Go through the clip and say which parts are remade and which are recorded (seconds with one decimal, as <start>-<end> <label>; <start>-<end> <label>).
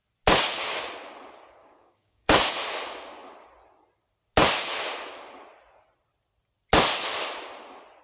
0.0-1.6 recorded; 1.6-2.5 remade; 2.5-8.0 recorded